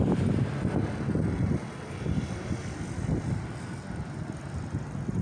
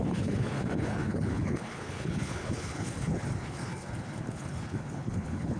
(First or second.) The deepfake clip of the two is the second